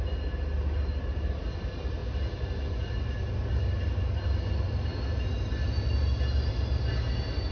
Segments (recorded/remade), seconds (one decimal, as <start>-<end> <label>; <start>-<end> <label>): 0.0-7.5 recorded